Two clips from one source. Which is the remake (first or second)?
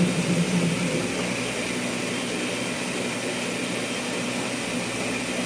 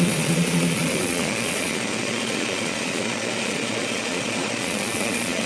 second